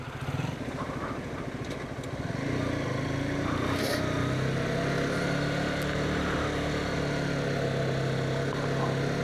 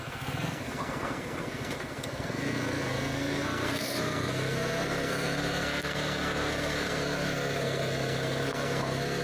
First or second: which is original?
first